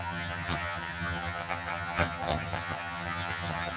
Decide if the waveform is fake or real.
fake